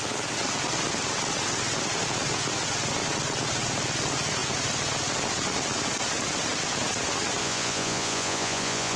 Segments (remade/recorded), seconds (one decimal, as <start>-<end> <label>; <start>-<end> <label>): 0.0-7.4 recorded; 7.4-9.0 remade

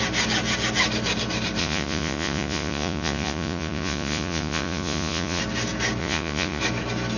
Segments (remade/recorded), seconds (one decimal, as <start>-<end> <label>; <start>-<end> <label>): 0.0-1.6 recorded; 1.6-5.4 remade; 5.4-6.0 recorded; 6.0-6.6 remade; 6.6-7.2 recorded

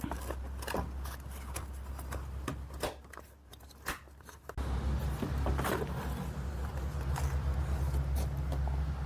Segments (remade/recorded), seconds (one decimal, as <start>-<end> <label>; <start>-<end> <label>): 0.0-9.1 recorded

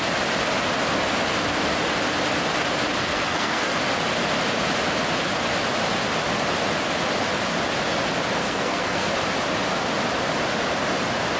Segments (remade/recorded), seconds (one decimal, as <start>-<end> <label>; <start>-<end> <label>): 0.0-3.0 recorded; 3.0-3.8 remade; 3.8-8.4 recorded; 8.4-9.1 remade; 9.1-11.4 recorded

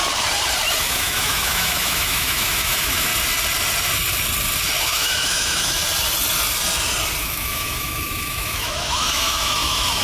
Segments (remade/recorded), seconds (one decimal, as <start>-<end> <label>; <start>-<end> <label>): 0.0-0.8 recorded; 0.8-3.1 remade; 3.1-4.8 recorded; 4.8-5.8 remade; 5.8-7.2 recorded; 7.2-10.0 remade